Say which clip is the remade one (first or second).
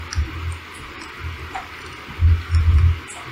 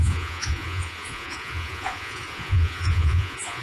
second